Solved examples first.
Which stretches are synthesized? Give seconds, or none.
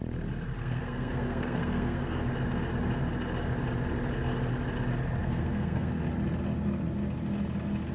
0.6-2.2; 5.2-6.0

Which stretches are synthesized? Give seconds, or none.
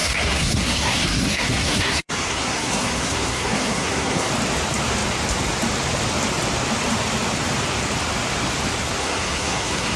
0.0-4.3; 9.0-10.0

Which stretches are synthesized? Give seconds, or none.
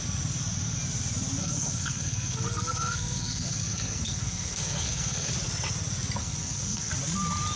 1.4-5.3; 6.2-6.9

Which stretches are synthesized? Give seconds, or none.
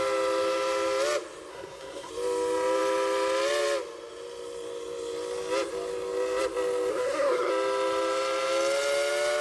1.5-2.1; 6.9-7.5